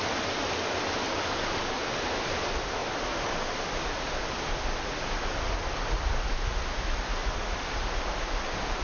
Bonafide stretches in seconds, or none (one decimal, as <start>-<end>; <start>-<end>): 0.0-7.2; 7.8-8.8